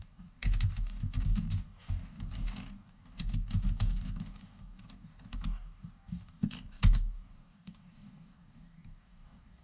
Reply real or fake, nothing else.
fake